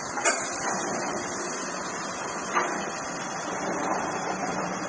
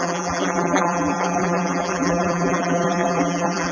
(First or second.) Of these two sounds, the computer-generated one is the second